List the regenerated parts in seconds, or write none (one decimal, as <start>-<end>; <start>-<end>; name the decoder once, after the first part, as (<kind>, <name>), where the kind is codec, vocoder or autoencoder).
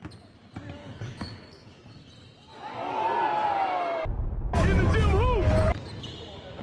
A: 0.8-1.8 (codec, HILCodec)